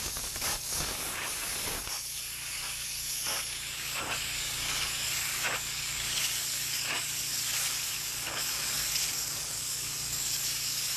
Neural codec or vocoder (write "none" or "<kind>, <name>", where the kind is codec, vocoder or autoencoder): codec, DAC